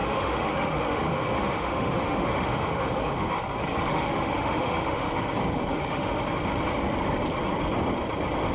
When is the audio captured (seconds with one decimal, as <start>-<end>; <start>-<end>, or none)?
3.3-3.9; 5.1-5.7; 6.2-8.5